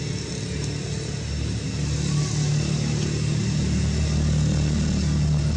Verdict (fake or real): real